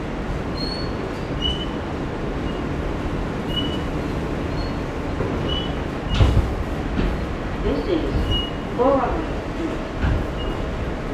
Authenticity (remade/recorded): recorded